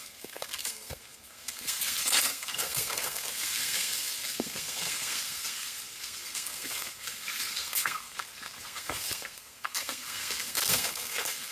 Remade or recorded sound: remade